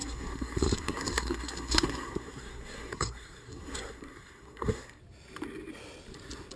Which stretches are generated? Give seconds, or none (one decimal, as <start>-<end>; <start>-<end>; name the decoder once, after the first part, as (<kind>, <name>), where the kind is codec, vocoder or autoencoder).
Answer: 0.0-5.0 (codec, SNAC)